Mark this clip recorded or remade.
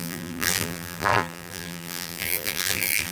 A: remade